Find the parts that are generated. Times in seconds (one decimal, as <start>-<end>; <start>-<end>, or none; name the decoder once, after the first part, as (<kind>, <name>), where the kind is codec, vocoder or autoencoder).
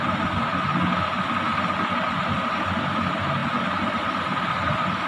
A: none